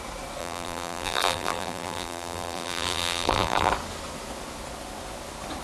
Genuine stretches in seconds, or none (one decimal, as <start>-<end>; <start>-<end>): 0.0-0.4; 3.7-5.6

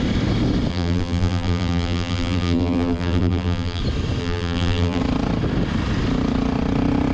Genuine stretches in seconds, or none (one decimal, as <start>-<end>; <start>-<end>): 0.0-0.7; 3.8-4.2; 5.0-7.1

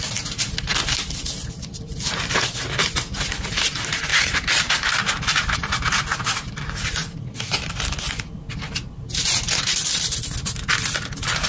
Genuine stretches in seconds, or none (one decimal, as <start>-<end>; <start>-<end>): 0.0-4.1; 4.9-11.5

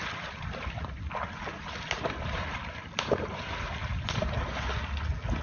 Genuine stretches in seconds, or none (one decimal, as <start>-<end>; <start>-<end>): 3.2-3.9; 4.4-5.4

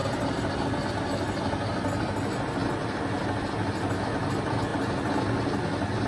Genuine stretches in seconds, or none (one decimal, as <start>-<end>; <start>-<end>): 0.5-6.1

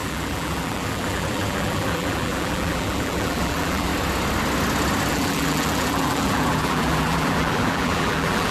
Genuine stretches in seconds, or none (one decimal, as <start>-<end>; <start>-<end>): 3.9-5.1

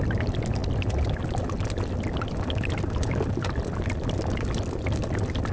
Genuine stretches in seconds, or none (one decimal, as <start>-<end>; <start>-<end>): 0.0-5.5

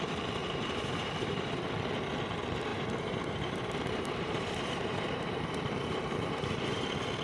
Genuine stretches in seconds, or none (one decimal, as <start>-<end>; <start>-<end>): 0.0-0.4; 1.6-2.7; 6.8-7.2